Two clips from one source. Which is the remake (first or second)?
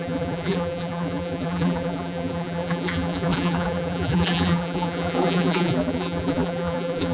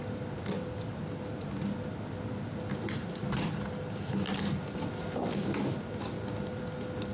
first